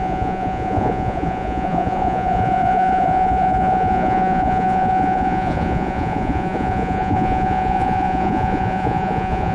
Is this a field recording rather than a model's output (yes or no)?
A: no